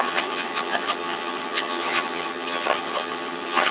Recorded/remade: remade